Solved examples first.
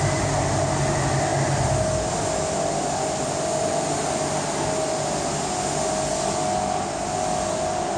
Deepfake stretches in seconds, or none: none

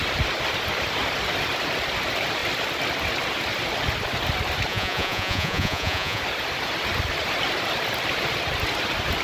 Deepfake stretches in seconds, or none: 4.7-6.2

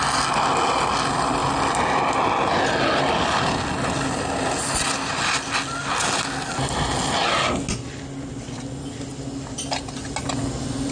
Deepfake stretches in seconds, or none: none

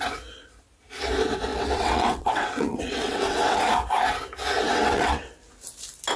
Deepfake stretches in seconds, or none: 1.5-3.6; 4.7-5.3

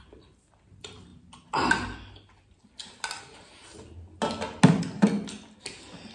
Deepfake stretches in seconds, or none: none

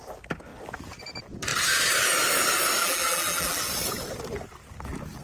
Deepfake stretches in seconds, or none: 2.8-3.6

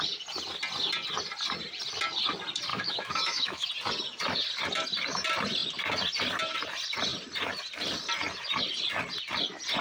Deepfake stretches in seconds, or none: 2.7-3.7

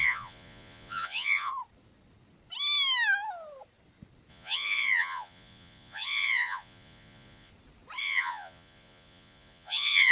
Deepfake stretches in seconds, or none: 0.0-1.5; 4.3-7.5; 8.0-10.1